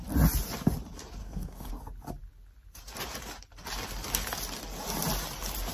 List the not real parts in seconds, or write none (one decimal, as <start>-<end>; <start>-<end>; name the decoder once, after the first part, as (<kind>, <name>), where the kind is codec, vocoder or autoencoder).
1.2-1.7 (codec, SNAC)